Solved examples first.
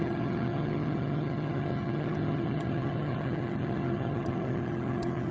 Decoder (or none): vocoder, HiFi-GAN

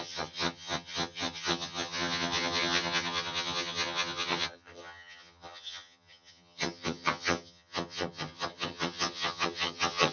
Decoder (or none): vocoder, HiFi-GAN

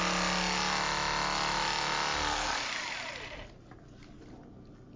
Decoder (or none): none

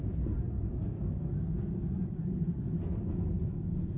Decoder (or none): none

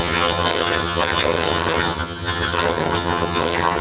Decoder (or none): vocoder, HiFi-GAN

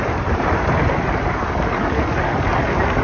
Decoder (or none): none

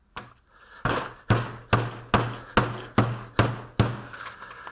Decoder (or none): none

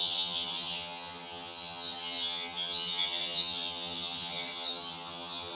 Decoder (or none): vocoder, HiFi-GAN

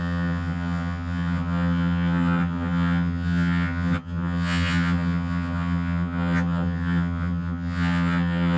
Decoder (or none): vocoder, HiFi-GAN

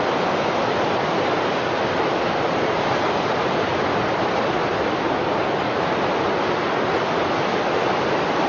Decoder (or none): none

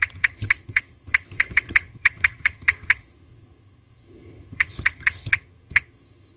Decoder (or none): vocoder, HiFi-GAN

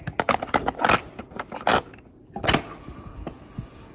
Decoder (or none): none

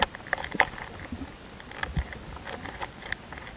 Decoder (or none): none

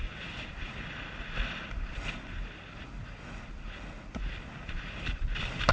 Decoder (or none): none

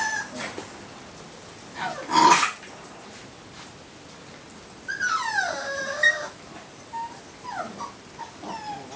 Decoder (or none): none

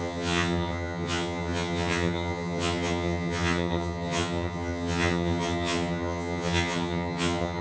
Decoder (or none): vocoder, HiFi-GAN